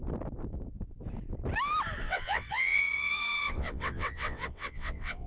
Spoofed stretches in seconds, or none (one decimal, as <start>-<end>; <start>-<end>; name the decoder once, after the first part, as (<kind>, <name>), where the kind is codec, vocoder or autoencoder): 2.0-5.3 (vocoder, WaveNeXt)